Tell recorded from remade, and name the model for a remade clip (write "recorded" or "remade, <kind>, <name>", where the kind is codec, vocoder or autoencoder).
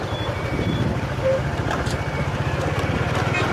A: remade, vocoder, BigVGAN v2